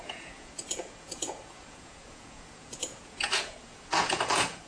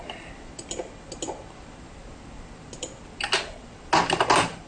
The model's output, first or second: first